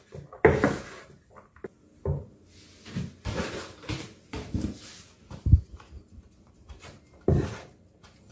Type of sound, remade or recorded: recorded